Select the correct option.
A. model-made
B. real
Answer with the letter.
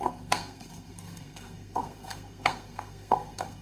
A